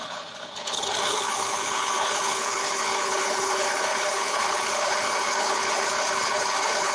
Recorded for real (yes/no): no